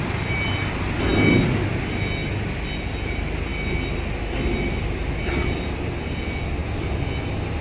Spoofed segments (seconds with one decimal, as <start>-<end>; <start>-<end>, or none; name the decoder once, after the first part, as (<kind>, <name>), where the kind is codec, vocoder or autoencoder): none